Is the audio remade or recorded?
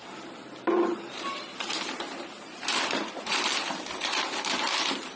remade